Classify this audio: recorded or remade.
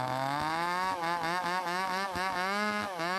remade